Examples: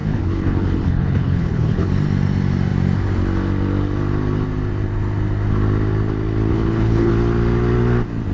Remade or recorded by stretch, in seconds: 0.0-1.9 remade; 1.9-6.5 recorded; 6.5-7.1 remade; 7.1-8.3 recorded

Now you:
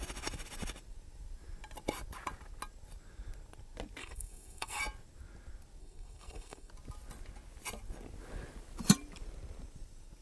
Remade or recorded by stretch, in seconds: 0.0-4.0 recorded; 4.0-4.8 remade; 4.8-5.8 recorded; 5.8-6.7 remade; 6.7-10.2 recorded

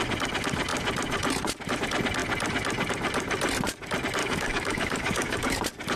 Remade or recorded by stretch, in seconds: 0.0-4.2 recorded; 4.2-5.6 remade; 5.6-6.0 recorded

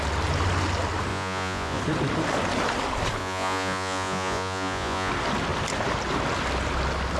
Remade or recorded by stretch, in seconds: 0.0-1.1 recorded; 1.1-1.8 remade; 1.8-3.2 recorded; 3.2-5.1 remade; 5.1-7.2 recorded

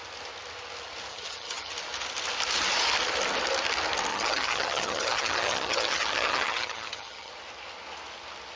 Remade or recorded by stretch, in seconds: 0.0-1.1 recorded; 1.1-1.7 remade; 1.7-4.1 recorded; 4.1-7.3 remade; 7.3-8.6 recorded